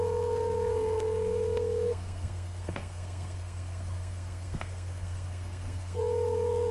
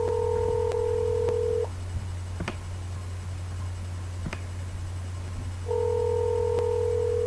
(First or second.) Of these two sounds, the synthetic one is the first